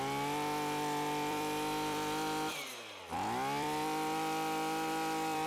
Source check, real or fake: fake